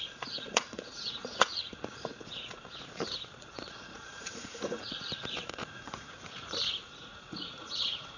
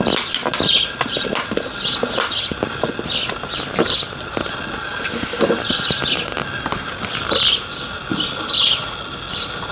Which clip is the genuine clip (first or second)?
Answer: second